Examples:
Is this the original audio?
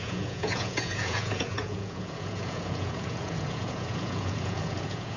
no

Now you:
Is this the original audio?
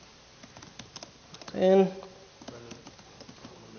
yes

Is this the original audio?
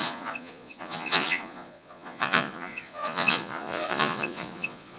no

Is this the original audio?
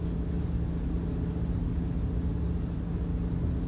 yes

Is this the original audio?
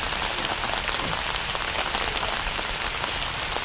yes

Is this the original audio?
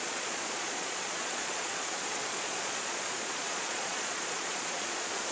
no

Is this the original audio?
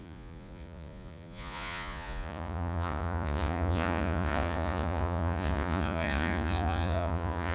no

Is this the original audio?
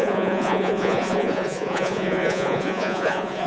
no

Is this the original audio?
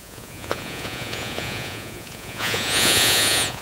no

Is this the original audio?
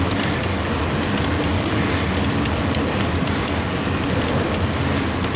yes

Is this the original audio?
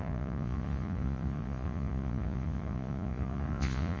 no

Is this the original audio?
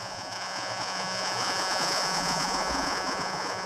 no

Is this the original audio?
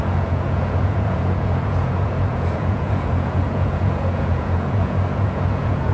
no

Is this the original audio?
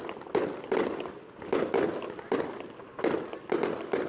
yes